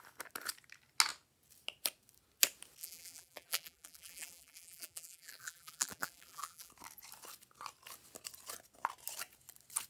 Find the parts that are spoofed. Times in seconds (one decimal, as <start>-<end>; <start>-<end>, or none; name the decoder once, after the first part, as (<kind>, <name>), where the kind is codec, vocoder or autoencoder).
2.8-6.7 (vocoder, BigVGAN v2)